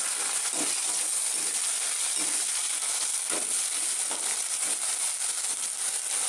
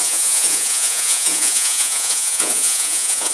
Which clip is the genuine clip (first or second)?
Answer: first